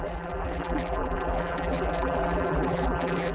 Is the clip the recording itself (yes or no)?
no